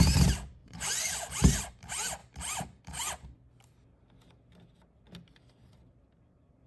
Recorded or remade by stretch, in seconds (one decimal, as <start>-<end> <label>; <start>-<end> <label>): 0.0-0.6 recorded; 0.6-1.3 remade; 1.3-6.7 recorded